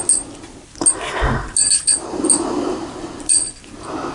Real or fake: real